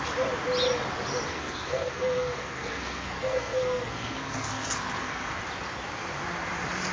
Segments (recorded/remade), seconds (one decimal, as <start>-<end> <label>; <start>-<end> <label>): 0.0-1.3 recorded; 1.3-5.4 remade; 5.4-6.9 recorded